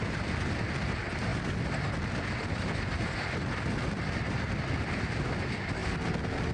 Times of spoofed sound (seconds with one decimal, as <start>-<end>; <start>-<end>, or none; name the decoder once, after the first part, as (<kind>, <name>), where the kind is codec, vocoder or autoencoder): none